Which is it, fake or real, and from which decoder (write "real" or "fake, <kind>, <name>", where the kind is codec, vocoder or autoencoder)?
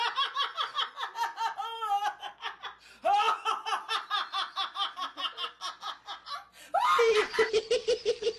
real